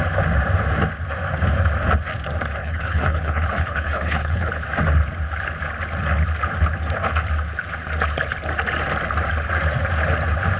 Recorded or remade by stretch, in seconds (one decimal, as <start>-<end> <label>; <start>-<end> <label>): 0.0-2.6 recorded; 2.6-4.5 remade; 4.5-10.6 recorded